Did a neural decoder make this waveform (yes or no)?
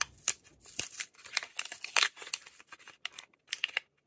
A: no